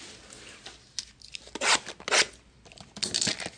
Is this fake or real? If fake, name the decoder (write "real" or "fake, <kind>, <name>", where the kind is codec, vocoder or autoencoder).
real